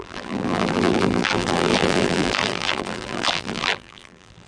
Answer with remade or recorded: remade